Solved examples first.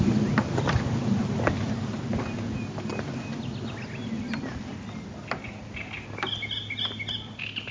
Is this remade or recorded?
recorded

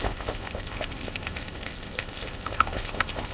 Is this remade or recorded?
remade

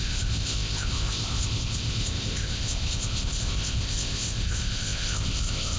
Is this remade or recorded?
remade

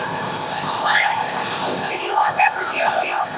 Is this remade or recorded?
remade